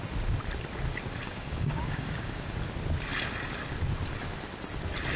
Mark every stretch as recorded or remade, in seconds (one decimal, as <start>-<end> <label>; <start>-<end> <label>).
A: 0.0-1.2 recorded; 1.2-2.5 remade; 2.5-5.2 recorded